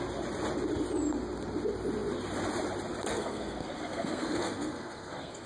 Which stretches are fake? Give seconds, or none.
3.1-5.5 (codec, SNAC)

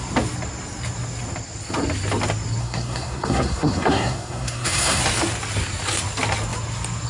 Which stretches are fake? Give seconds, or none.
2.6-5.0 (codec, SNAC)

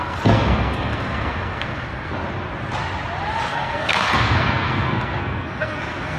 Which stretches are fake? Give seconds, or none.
0.0-2.2 (codec, SNAC); 3.4-6.2

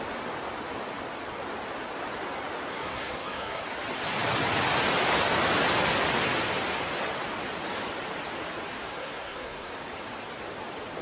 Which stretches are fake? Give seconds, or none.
2.7-3.6 (codec, SNAC); 8.9-9.7

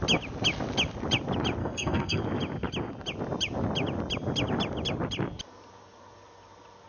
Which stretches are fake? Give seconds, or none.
1.6-2.2 (codec, SNAC)

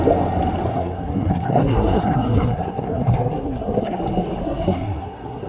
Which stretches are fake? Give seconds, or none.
0.7-4.0 (codec, SNAC); 4.4-5.5

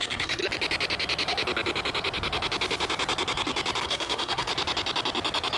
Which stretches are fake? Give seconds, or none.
0.0-0.4 (codec, SNAC); 3.8-4.5

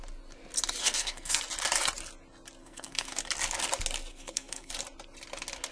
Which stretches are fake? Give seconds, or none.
0.8-1.4 (codec, SNAC); 2.6-3.2; 4.1-4.7